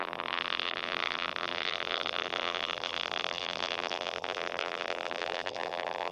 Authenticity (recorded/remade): remade